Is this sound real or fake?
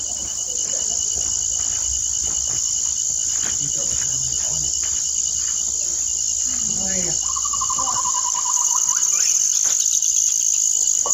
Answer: fake